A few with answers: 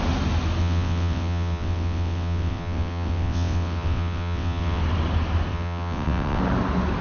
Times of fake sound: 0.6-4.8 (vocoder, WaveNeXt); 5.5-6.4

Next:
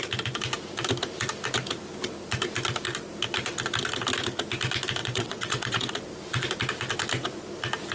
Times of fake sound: 5.0-5.9 (vocoder, WaveNeXt)